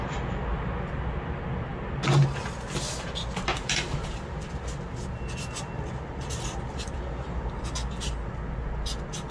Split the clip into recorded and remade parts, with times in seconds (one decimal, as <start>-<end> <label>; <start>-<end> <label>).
0.0-9.3 recorded